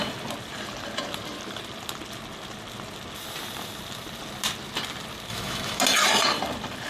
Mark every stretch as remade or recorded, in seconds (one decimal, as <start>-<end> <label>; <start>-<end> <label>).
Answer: 0.0-5.3 recorded; 5.3-5.8 remade; 5.8-6.9 recorded